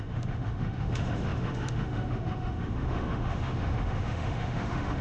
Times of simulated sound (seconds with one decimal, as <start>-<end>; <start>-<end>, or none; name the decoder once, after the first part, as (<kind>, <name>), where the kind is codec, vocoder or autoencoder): 0.0-5.0 (autoencoder, DAC-VAE)

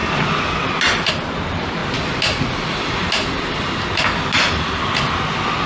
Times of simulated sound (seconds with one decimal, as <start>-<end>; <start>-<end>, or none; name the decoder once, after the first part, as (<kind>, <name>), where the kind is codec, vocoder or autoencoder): none

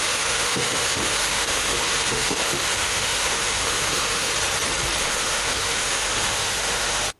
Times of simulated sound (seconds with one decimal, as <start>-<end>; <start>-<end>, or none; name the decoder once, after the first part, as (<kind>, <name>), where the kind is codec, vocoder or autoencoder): 0.0-4.3 (autoencoder, DAC-VAE); 5.0-7.2